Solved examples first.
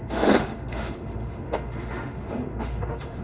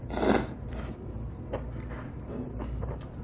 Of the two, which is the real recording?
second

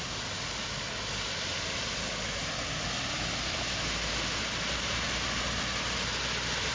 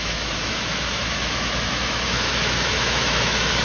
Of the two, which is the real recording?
first